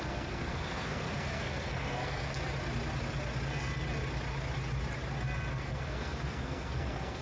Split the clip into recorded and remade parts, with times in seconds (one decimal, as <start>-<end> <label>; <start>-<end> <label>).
0.0-2.3 remade; 2.3-5.5 recorded; 5.5-7.2 remade